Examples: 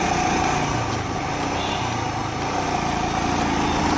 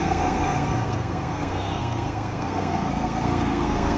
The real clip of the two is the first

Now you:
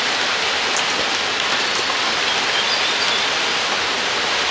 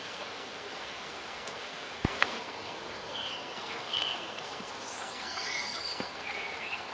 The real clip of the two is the first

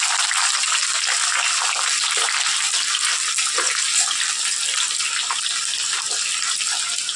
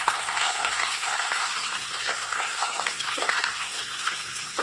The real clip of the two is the first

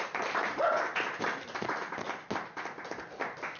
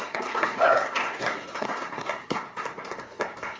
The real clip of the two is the first